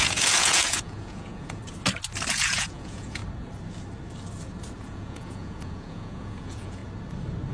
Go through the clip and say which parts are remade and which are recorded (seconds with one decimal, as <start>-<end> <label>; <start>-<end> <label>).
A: 0.0-1.6 remade; 1.6-2.3 recorded; 2.3-3.2 remade; 3.2-4.8 recorded; 4.8-6.8 remade; 6.8-7.5 recorded